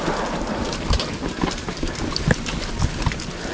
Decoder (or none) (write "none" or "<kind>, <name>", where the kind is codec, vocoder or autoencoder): none